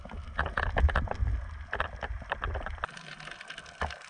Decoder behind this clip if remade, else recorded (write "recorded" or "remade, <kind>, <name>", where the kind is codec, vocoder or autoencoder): recorded